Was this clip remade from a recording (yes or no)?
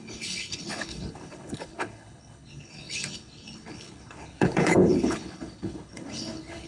yes